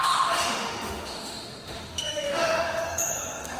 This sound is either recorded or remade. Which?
remade